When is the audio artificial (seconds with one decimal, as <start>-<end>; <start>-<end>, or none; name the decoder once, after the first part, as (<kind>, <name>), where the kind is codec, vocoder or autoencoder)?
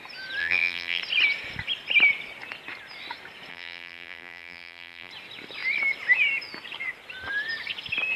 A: 0.4-1.0 (vocoder, BigVGAN v2); 3.5-5.1